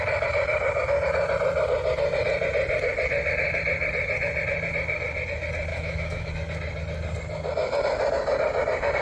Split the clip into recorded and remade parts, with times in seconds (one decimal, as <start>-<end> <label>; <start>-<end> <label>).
0.0-5.7 recorded; 5.7-6.3 remade; 6.3-9.0 recorded